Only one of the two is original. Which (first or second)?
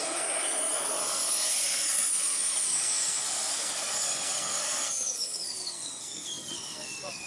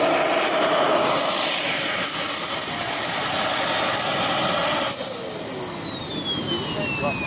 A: second